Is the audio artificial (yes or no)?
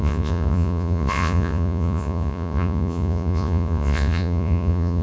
yes